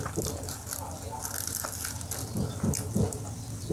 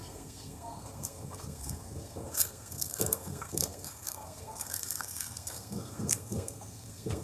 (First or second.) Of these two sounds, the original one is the first